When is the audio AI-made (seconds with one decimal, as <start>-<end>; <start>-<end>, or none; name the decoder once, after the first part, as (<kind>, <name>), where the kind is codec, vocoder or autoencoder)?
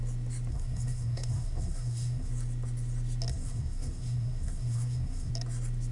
0.5-2.3 (codec, SNAC); 3.3-5.3